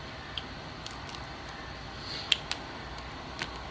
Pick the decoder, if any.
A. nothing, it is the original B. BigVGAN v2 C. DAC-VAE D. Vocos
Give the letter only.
A